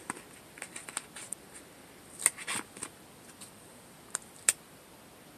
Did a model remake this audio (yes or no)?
no